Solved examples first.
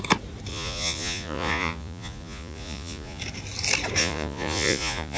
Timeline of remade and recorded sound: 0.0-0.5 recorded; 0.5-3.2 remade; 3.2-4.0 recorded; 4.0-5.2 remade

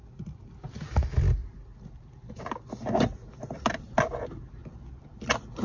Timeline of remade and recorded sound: 0.0-5.6 recorded

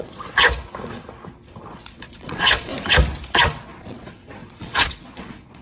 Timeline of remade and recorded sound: 0.0-0.4 remade; 0.4-1.7 recorded; 1.7-2.7 remade; 2.7-3.8 recorded; 3.8-5.6 remade

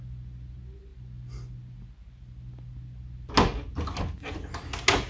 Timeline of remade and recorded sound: 0.0-5.1 recorded

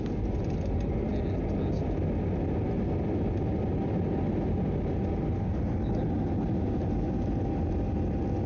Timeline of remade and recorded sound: 0.0-8.5 recorded